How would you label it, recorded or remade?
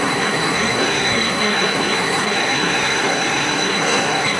remade